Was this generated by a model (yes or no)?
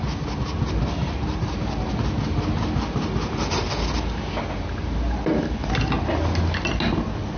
no